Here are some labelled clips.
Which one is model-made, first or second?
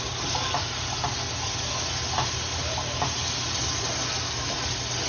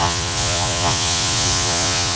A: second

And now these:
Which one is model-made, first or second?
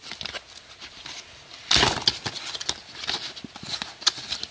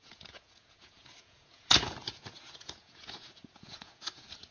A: second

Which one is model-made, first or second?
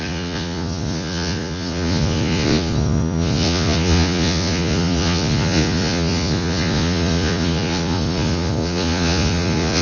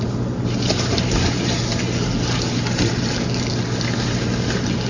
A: first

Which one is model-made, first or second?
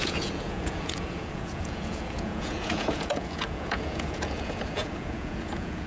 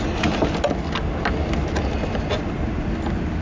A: first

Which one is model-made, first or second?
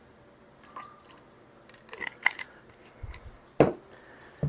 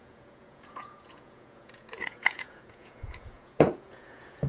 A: second